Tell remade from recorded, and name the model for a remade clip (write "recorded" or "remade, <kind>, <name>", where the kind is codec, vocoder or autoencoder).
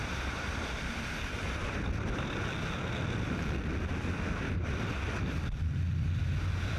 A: recorded